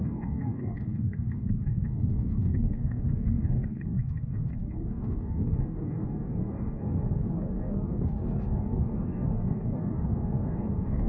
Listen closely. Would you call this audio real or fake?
fake